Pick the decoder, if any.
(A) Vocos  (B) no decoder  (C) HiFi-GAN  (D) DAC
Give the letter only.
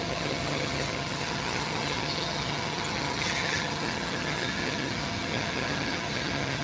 C